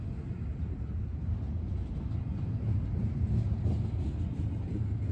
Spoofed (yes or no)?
no